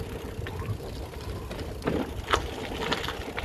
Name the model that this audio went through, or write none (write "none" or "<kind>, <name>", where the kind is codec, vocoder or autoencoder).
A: none